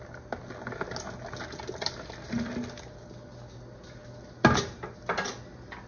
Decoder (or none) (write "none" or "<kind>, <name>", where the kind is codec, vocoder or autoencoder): none